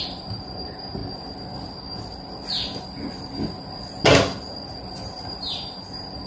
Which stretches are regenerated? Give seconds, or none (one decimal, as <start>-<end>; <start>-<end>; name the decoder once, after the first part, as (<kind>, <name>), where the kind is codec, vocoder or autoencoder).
0.0-1.0 (vocoder, BigVGAN v2); 4.8-6.3